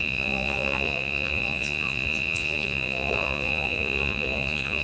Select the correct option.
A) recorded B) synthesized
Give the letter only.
B